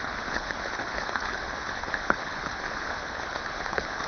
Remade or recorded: remade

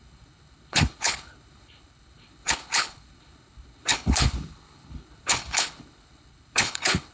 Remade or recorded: remade